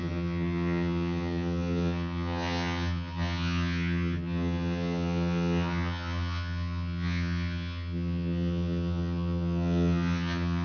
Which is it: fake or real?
fake